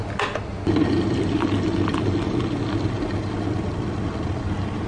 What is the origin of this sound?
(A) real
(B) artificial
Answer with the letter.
A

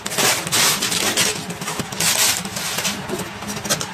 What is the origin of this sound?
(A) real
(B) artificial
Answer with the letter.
A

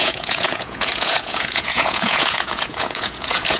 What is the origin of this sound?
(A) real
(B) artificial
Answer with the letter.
B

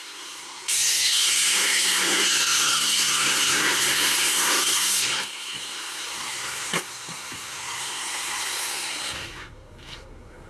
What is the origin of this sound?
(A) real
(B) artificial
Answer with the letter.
B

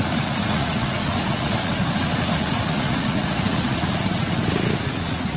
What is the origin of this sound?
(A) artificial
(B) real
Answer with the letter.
A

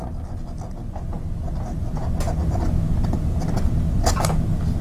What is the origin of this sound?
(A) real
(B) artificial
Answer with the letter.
A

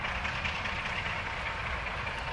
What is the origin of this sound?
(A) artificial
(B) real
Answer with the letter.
B